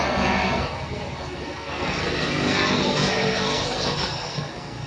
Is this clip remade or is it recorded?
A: remade